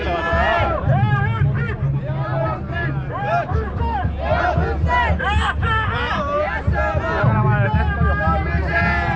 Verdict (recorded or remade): recorded